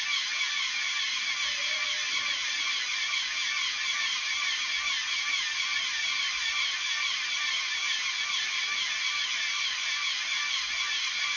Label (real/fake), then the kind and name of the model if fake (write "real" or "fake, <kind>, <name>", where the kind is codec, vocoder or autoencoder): real